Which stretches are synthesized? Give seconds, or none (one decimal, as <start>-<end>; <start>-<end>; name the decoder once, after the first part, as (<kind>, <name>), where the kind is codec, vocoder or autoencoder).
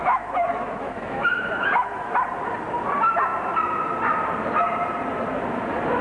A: 0.0-2.1 (autoencoder, DAC-VAE)